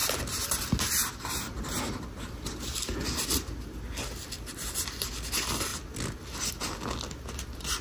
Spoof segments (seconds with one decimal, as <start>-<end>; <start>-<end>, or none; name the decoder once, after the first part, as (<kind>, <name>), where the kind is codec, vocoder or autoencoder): none